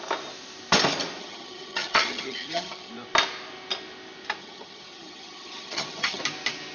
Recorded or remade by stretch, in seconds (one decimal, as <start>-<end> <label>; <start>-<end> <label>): 0.0-1.2 recorded; 1.2-2.9 remade; 2.9-4.4 recorded; 4.4-6.2 remade; 6.2-6.7 recorded